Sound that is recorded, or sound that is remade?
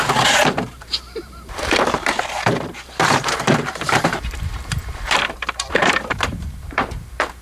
remade